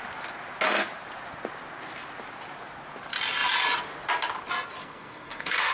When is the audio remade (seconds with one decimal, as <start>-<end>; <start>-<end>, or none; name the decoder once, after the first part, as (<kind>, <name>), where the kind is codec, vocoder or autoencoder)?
4.8-5.7 (codec, SNAC)